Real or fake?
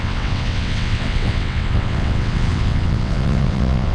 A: fake